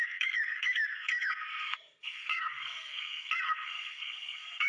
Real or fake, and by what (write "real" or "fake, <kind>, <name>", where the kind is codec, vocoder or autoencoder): fake, codec, SNAC